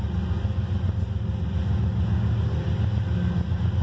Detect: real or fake real